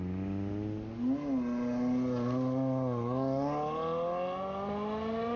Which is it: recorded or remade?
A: recorded